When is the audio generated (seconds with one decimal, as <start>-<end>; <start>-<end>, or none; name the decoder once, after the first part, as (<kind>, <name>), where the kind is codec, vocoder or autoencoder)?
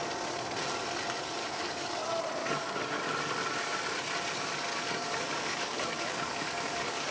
1.4-1.9 (codec, DAC); 2.4-3.0; 4.7-7.1